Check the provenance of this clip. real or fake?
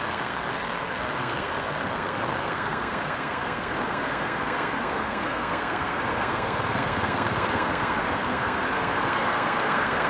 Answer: fake